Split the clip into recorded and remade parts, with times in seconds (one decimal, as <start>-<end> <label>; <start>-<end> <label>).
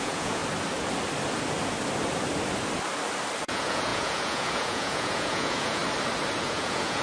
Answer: 0.0-0.4 remade; 0.4-3.4 recorded; 3.4-5.8 remade; 5.8-6.4 recorded; 6.4-7.0 remade